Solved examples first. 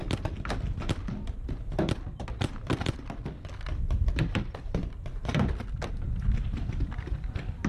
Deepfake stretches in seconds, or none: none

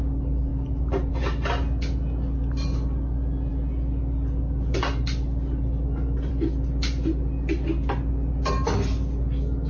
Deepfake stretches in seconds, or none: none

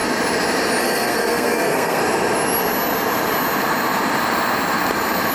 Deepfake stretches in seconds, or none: 0.8-2.0 (codec, SNAC)

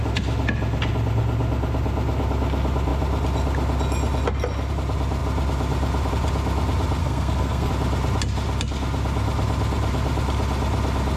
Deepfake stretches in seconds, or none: 7.0-7.7 (codec, SNAC)

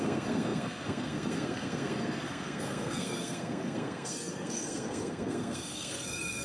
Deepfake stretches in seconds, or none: 0.0-6.4 (codec, SNAC)

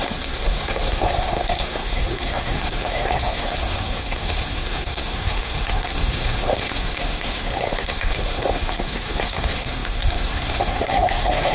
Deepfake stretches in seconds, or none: 0.0-11.5 (codec, SNAC)